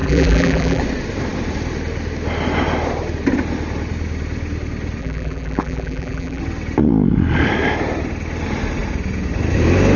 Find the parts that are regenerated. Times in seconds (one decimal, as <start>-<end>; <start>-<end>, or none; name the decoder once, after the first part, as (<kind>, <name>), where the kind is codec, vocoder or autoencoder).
0.0-0.8 (vocoder, BigVGAN v2); 5.0-6.4